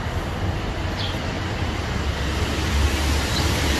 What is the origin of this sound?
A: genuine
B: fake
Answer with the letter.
A